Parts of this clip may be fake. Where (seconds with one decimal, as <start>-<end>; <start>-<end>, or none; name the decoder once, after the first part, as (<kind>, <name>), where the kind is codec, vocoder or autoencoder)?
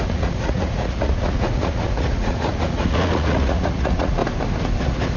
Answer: 0.0-4.2 (vocoder, Vocos); 4.8-5.2